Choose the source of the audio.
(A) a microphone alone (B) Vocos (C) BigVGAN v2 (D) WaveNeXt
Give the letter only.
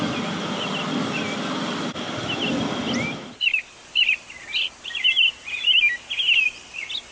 A